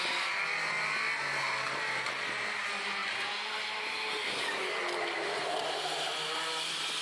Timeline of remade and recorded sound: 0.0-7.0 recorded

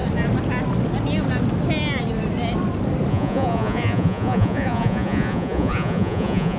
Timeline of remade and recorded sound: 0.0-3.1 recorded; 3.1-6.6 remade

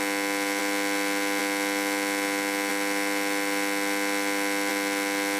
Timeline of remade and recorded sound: 0.0-5.4 recorded